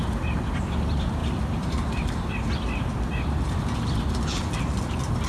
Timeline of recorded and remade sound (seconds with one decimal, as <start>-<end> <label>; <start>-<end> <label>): 0.0-1.2 recorded; 1.2-4.4 remade; 4.4-5.3 recorded